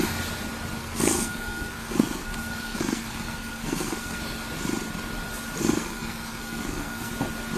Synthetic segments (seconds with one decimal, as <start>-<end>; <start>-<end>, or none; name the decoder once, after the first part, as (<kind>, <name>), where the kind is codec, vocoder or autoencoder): 0.8-4.2 (codec, SNAC); 5.6-7.1